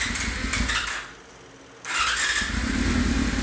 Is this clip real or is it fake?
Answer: real